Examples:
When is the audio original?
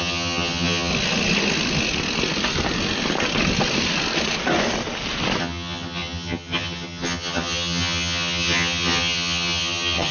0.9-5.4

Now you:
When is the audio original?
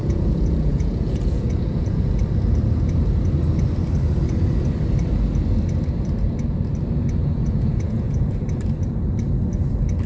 2.1-7.2; 8.4-10.1